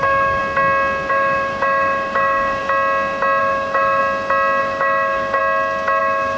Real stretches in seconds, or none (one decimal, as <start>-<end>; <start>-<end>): 0.4-1.1; 2.6-3.4; 4.0-4.6; 5.4-6.0